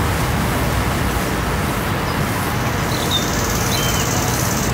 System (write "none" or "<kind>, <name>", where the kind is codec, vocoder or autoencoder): none